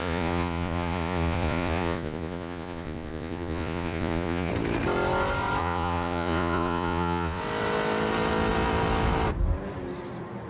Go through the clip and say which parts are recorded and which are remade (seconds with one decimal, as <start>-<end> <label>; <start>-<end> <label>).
0.0-4.5 remade; 4.5-5.6 recorded; 5.6-7.4 remade; 7.4-10.5 recorded